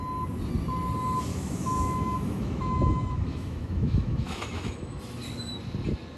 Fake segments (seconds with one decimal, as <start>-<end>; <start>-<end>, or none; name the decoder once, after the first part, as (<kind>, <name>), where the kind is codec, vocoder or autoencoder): 1.3-5.0 (autoencoder, DAC-VAE)